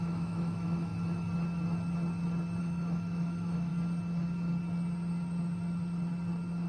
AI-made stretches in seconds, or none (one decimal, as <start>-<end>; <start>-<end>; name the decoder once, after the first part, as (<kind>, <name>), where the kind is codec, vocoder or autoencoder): 0.0-0.9 (autoencoder, DAC-VAE); 2.6-3.7